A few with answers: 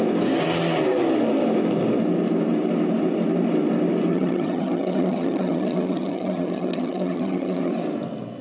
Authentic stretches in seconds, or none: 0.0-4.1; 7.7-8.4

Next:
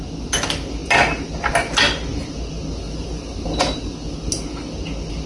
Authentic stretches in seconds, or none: 0.0-5.3

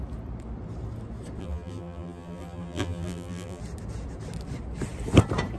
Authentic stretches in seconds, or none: 0.0-1.4; 3.6-5.6

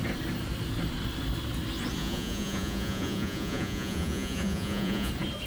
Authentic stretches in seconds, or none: 0.0-2.0; 5.1-5.5